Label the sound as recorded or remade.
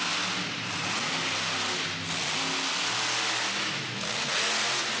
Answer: recorded